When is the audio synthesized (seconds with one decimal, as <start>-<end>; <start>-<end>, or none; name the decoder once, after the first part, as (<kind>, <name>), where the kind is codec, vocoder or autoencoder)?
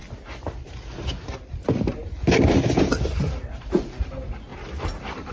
3.2-4.5 (vocoder, BigVGAN v2)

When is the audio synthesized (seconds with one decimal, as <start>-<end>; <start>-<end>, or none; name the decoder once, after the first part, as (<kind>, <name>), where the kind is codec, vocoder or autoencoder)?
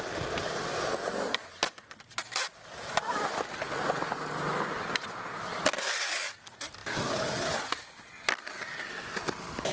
none